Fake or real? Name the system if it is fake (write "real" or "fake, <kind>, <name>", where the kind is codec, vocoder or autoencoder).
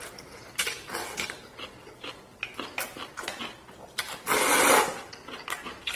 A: real